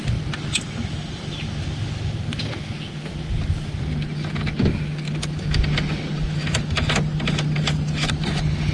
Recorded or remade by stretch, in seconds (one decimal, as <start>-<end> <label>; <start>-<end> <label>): 0.0-8.7 recorded